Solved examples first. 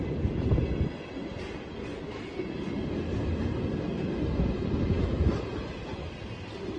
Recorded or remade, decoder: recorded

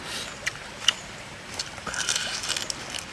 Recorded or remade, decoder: recorded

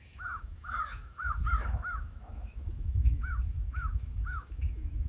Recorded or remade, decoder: remade, autoencoder, DAC-VAE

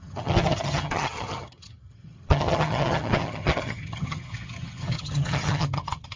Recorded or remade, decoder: remade, vocoder, HiFi-GAN